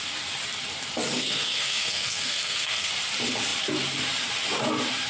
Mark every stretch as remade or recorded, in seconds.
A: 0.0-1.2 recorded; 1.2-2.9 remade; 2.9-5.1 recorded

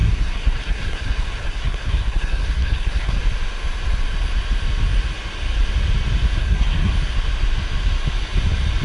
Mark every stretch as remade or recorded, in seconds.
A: 0.0-3.2 remade; 3.2-6.4 recorded; 6.4-6.9 remade; 6.9-8.8 recorded

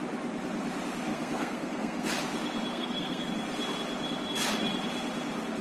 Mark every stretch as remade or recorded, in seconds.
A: 0.0-1.1 recorded; 1.1-2.1 remade; 2.1-2.7 recorded; 2.7-3.3 remade; 3.3-5.6 recorded

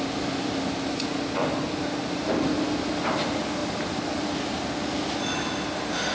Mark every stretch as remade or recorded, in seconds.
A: 0.0-6.1 recorded

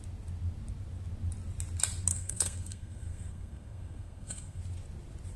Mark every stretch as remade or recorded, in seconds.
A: 0.0-2.1 recorded; 2.1-4.6 remade; 4.6-5.4 recorded